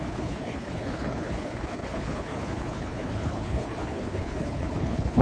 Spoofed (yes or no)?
yes